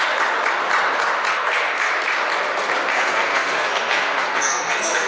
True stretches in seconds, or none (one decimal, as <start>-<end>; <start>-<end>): 0.0-1.3; 1.9-2.9